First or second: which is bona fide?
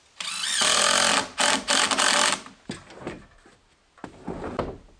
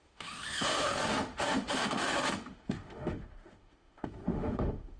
first